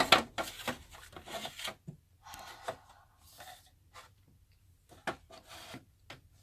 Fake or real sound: real